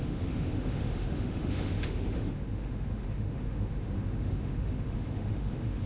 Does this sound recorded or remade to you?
remade